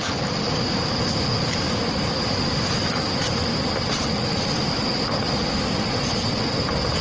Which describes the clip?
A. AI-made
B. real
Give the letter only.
B